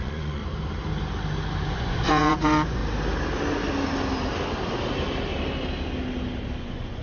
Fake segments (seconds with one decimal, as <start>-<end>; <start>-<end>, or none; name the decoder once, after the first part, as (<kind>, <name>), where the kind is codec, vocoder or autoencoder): 0.0-0.4 (vocoder, Vocos); 1.7-2.8; 6.6-7.0